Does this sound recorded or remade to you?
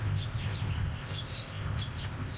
remade